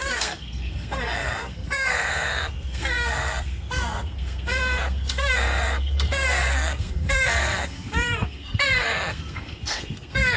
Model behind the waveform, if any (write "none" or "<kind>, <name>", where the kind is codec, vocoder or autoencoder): codec, SNAC